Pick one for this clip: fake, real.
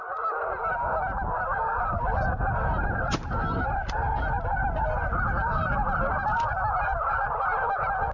real